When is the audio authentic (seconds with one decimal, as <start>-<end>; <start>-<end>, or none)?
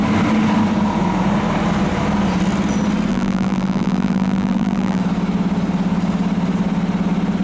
0.0-3.1; 5.0-7.4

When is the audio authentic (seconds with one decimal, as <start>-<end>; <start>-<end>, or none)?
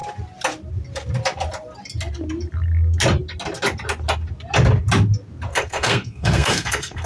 0.0-5.5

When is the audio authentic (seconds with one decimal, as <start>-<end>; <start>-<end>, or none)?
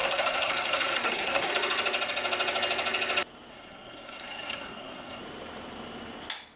1.5-3.5; 5.2-6.6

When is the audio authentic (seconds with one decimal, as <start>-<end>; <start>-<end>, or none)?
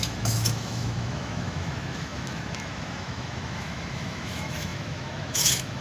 none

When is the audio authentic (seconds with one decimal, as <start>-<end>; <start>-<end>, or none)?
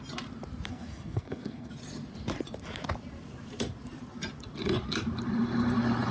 0.0-0.7; 1.7-6.1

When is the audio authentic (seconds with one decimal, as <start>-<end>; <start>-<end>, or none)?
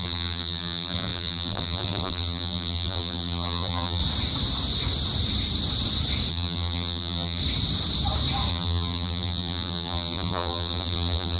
4.0-6.3; 7.4-8.5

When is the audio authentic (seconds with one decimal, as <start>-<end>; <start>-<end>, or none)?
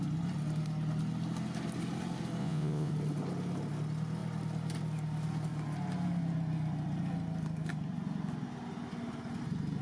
0.0-2.4; 2.9-9.8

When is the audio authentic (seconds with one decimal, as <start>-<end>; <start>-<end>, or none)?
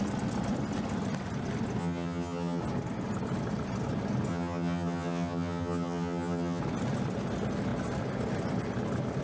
0.0-1.8; 2.6-4.3; 6.6-9.2